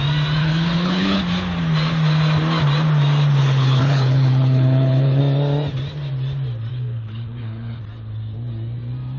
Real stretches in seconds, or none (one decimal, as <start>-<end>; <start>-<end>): 0.0-0.4; 1.2-3.4; 5.2-6.7; 7.8-9.2